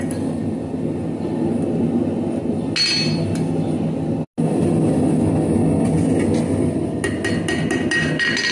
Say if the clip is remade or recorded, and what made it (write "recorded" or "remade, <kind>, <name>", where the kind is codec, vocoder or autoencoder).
recorded